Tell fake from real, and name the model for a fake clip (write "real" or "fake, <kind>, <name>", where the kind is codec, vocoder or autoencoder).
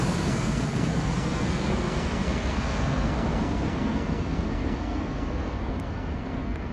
fake, codec, SNAC